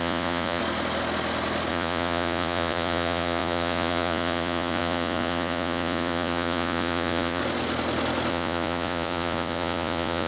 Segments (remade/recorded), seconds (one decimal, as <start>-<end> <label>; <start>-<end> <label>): 0.0-0.6 remade; 0.6-1.7 recorded; 1.7-7.4 remade; 7.4-8.3 recorded; 8.3-10.3 remade